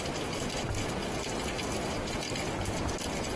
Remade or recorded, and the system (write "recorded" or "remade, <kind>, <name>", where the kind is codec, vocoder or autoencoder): recorded